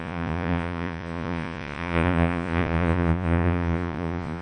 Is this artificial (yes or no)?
yes